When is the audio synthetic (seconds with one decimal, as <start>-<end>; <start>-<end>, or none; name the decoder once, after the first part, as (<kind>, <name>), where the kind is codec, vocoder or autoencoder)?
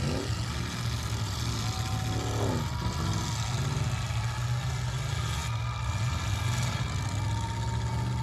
none